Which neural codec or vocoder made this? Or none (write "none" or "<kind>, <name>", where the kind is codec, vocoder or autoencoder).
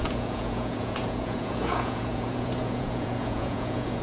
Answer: vocoder, Vocos